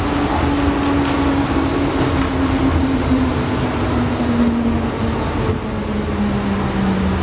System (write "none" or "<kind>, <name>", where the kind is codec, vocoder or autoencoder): none